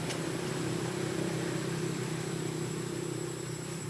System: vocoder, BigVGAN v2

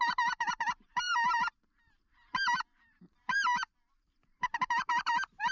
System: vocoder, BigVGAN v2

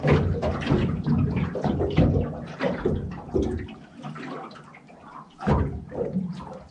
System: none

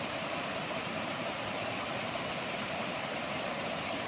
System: vocoder, BigVGAN v2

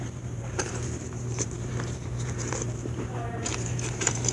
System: vocoder, BigVGAN v2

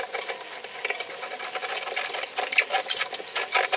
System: none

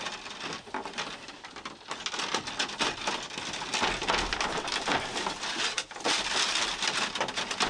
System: none